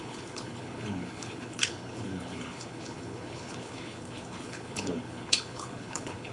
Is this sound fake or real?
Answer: fake